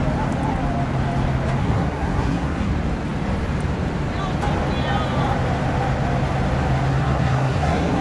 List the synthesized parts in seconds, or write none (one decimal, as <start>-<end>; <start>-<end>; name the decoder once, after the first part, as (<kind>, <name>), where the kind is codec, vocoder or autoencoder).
1.6-2.7 (codec, SNAC); 6.9-8.0